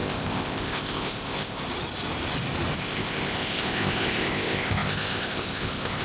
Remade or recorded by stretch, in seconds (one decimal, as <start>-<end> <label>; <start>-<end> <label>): 0.0-1.6 remade; 1.6-2.8 recorded; 2.8-6.0 remade